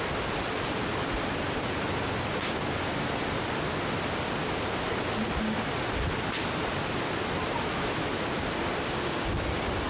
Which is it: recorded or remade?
recorded